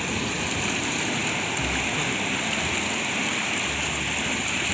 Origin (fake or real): real